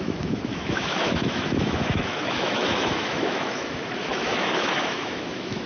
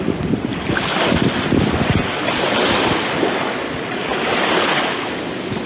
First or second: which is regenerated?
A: first